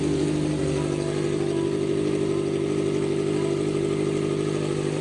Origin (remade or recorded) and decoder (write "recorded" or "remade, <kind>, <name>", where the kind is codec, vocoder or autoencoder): recorded